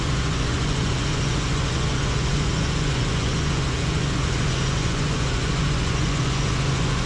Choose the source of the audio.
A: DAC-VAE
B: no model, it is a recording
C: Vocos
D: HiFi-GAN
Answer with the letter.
C